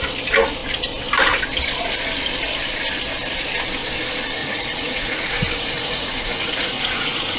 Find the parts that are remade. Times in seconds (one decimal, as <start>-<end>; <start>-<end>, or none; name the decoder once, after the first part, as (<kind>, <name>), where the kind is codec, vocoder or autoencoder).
4.4-7.4 (vocoder, Vocos)